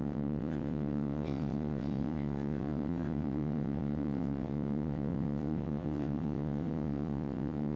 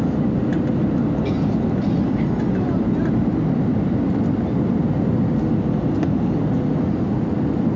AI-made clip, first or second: first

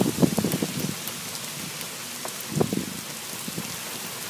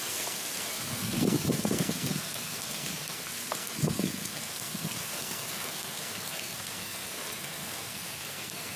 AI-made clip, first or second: second